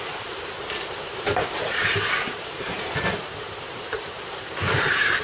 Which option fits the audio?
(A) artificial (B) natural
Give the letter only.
A